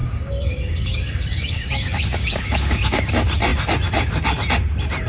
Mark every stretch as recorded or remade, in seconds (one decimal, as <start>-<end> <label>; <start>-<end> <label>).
0.0-3.1 remade; 3.1-5.1 recorded